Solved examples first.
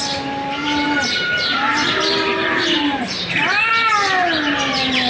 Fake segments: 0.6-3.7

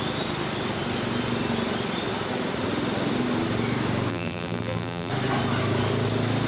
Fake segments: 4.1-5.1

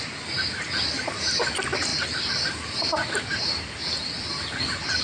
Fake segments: none